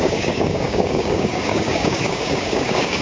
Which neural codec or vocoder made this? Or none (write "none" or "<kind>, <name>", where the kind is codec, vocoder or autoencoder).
codec, DAC